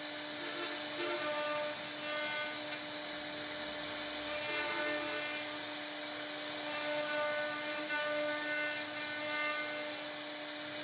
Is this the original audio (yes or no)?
yes